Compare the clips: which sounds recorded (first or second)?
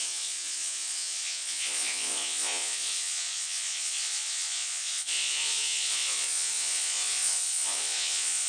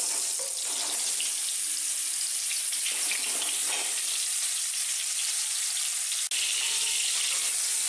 second